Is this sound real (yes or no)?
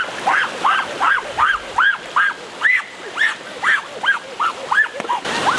yes